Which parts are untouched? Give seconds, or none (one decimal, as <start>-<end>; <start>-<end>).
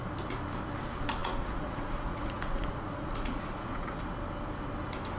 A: 0.0-1.2; 4.0-5.2